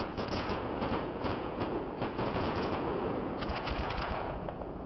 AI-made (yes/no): yes